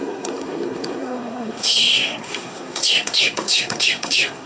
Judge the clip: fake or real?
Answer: fake